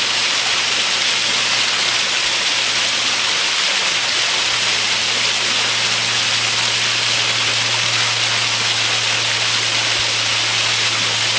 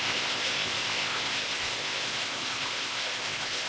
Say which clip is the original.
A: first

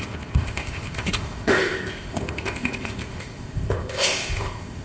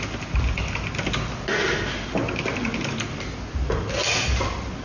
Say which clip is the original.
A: second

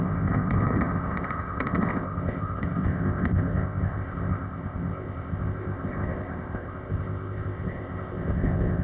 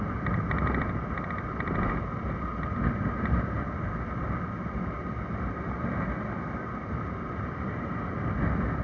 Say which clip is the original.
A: second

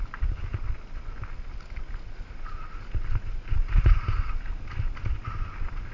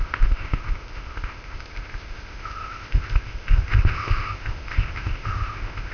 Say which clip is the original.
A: first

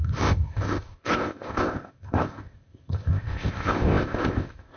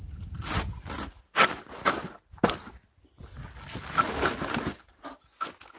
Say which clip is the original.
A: second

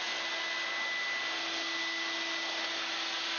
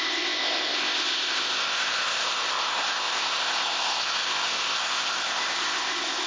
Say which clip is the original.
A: first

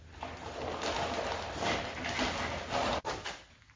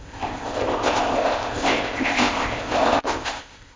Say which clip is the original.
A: first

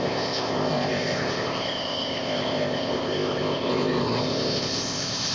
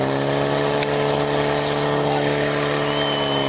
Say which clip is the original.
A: second